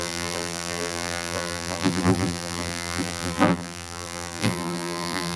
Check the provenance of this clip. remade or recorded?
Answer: remade